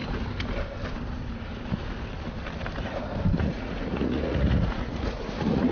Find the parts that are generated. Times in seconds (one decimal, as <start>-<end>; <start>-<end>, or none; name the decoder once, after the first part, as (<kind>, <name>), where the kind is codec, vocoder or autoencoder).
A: 3.4-5.7 (vocoder, Vocos)